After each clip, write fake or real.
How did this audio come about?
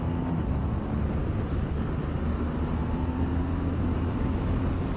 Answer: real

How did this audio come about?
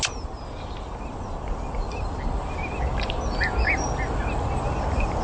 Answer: real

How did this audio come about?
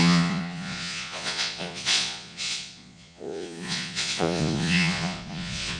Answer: fake